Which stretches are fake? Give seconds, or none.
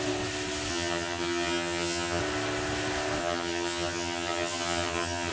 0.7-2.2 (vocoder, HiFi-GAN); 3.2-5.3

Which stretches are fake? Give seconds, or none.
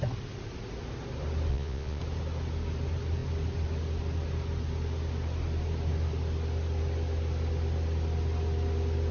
1.5-2.0 (vocoder, Vocos)